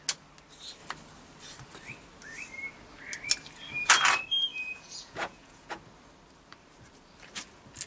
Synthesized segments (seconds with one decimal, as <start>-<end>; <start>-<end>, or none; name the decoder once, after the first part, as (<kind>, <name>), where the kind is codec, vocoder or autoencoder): 4.5-5.8 (vocoder, Vocos)